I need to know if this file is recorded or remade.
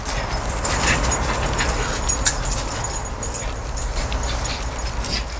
recorded